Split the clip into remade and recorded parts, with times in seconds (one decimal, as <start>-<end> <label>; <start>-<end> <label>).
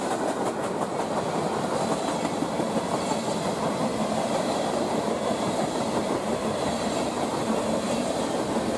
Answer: 0.0-3.9 recorded; 3.9-8.2 remade; 8.2-8.8 recorded